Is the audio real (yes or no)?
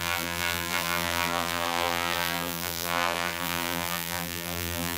no